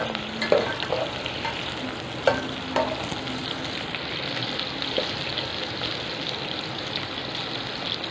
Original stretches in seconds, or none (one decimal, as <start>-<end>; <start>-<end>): 0.0-8.1

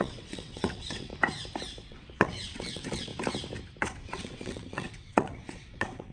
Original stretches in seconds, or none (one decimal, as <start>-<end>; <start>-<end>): 1.1-1.9; 3.1-3.8